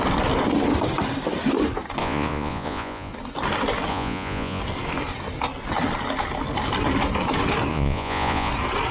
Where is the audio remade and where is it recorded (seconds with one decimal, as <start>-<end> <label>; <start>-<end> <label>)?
0.0-2.0 recorded; 2.0-3.1 remade; 3.1-3.9 recorded; 3.9-4.6 remade; 4.6-7.7 recorded; 7.7-8.5 remade; 8.5-8.9 recorded